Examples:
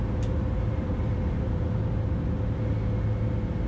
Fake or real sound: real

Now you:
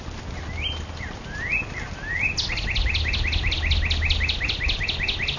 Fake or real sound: real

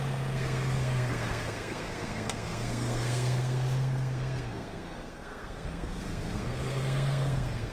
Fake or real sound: fake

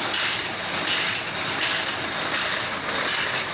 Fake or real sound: fake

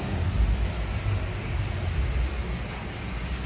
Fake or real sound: real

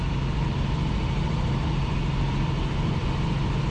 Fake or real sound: real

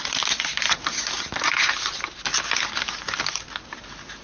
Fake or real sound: real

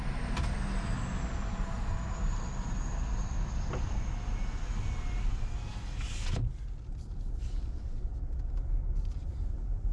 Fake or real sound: real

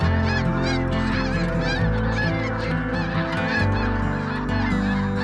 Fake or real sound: real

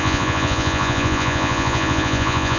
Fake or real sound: fake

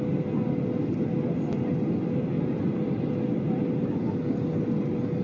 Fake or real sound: real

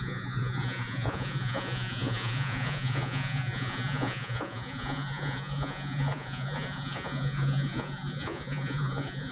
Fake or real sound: fake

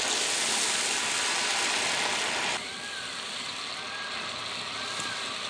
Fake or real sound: real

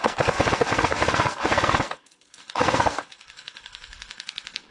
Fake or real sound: fake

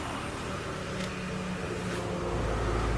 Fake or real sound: real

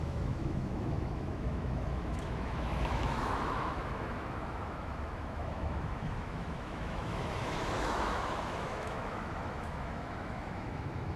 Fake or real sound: fake